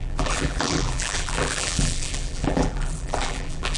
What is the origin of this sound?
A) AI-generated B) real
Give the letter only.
A